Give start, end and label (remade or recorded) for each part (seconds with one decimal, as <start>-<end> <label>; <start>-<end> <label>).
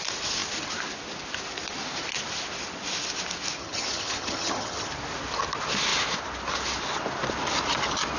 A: 0.0-3.6 recorded; 3.6-4.9 remade; 4.9-8.2 recorded